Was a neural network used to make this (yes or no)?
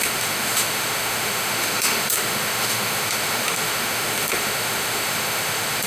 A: yes